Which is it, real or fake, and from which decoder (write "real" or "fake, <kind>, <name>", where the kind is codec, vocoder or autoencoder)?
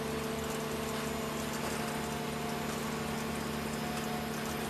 real